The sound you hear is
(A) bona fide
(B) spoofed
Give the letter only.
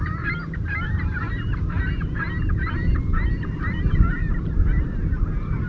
B